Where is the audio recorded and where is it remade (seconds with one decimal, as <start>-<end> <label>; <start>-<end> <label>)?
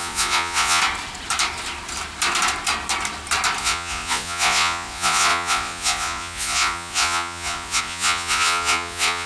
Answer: 0.0-0.8 remade; 0.8-3.6 recorded; 3.6-9.3 remade